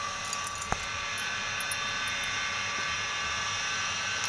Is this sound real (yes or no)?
yes